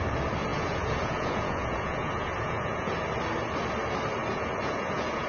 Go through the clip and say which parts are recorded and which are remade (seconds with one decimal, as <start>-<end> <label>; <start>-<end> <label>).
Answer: 0.0-0.5 recorded; 0.5-3.0 remade; 3.0-4.2 recorded; 4.2-5.3 remade